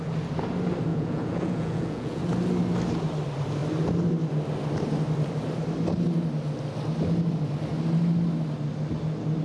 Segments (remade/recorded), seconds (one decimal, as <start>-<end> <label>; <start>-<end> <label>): 0.0-0.9 recorded; 0.9-2.2 remade; 2.2-9.4 recorded